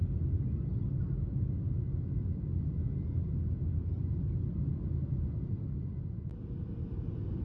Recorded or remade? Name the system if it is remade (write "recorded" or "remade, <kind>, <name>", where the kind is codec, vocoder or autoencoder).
recorded